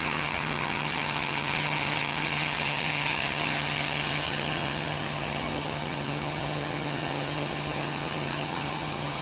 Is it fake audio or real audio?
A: fake